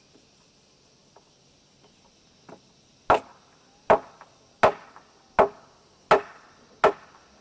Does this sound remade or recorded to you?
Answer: recorded